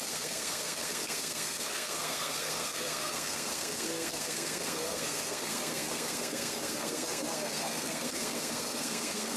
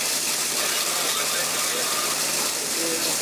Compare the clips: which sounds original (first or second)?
second